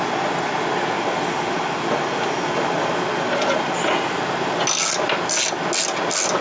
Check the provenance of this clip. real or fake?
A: real